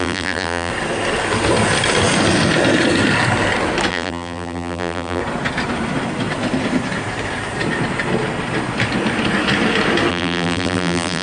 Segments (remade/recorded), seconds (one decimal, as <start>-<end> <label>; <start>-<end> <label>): 0.0-0.7 remade; 0.7-3.9 recorded; 3.9-5.2 remade; 5.2-10.1 recorded; 10.1-11.2 remade